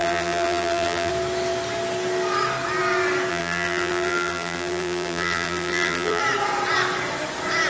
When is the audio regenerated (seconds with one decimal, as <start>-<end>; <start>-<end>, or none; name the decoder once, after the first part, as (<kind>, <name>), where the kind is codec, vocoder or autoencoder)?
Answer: 0.0-1.1 (vocoder, BigVGAN v2); 3.3-6.2